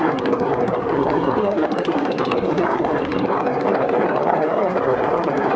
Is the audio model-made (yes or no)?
yes